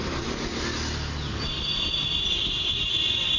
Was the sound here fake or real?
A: real